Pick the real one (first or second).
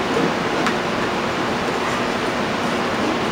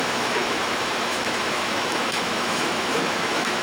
first